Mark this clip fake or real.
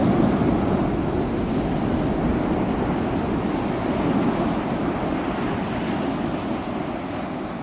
real